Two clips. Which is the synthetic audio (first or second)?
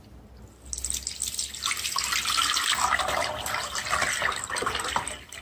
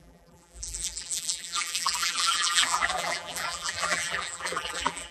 second